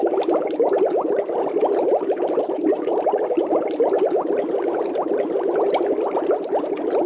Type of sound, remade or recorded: recorded